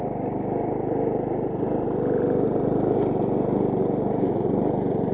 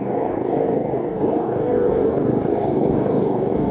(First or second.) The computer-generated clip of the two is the second